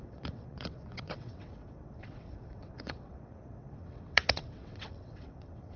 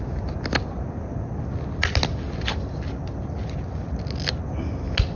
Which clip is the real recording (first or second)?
second